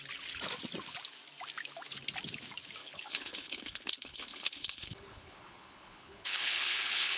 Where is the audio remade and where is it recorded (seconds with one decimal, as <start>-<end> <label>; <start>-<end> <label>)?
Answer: 0.0-2.8 recorded; 2.8-7.2 remade